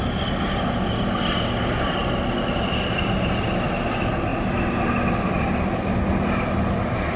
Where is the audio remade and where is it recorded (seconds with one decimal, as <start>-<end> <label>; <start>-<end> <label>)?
0.0-2.0 recorded; 2.0-2.7 remade; 2.7-7.2 recorded